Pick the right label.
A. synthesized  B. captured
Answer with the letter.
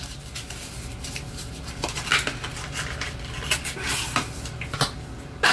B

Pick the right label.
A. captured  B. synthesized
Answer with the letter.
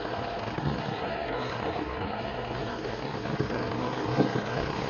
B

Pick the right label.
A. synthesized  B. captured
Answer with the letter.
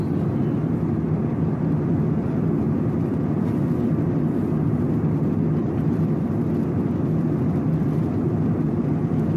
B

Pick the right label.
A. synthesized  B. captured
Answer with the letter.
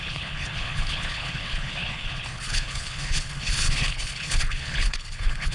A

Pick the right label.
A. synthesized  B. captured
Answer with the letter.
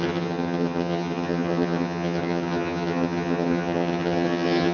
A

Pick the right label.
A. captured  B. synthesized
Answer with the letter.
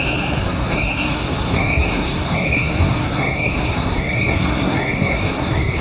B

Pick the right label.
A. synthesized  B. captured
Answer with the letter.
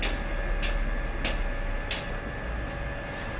B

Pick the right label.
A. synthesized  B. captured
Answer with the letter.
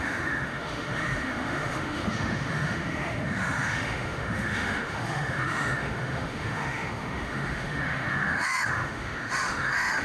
A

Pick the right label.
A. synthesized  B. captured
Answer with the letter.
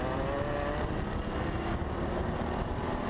B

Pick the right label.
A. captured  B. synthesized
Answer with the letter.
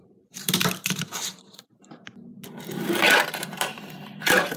B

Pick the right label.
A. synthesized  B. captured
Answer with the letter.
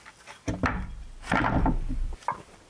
B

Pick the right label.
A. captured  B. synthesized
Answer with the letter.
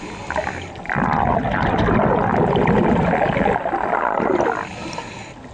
A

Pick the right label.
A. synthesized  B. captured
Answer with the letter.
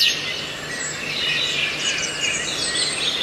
B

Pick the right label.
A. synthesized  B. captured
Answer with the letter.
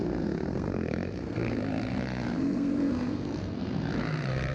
A